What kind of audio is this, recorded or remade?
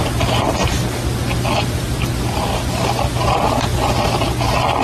recorded